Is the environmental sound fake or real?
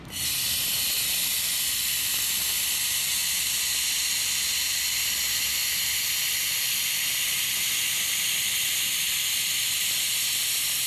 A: real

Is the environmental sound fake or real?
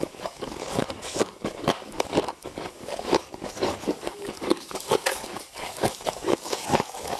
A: fake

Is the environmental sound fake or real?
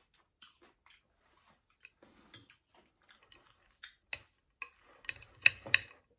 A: real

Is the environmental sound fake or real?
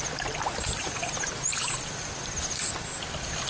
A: real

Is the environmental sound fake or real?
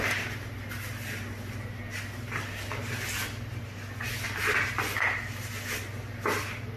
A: real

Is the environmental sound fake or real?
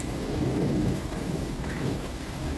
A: fake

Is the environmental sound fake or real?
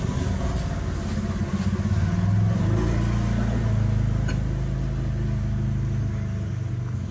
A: real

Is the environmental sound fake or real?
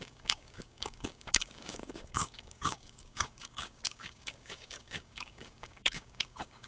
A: fake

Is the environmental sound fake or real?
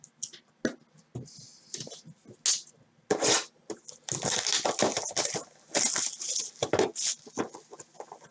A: real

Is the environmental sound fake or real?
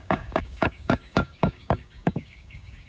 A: fake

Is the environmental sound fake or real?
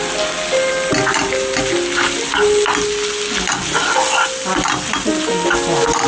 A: real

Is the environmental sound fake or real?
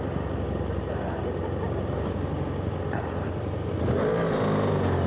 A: real